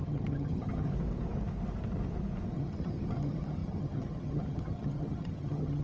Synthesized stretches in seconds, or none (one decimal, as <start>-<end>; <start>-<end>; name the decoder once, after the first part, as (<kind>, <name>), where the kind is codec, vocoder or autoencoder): 0.0-0.9 (vocoder, HiFi-GAN); 2.5-5.8